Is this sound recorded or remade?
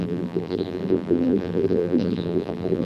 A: remade